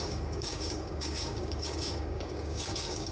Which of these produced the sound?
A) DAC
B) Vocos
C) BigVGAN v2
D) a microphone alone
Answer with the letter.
A